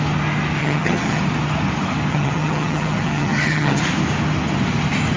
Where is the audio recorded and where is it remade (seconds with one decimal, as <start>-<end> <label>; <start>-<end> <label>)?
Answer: 0.0-0.6 recorded; 0.6-1.2 remade; 1.2-2.1 recorded; 2.1-3.8 remade; 3.8-5.2 recorded